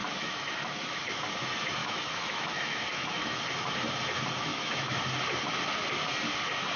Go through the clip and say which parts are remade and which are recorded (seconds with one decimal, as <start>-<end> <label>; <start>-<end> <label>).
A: 0.0-1.2 remade; 1.2-1.8 recorded; 1.8-3.4 remade; 3.4-4.5 recorded; 4.5-5.0 remade; 5.0-6.8 recorded